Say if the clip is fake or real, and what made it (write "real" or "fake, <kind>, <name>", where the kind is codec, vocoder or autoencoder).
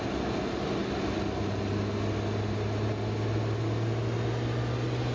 real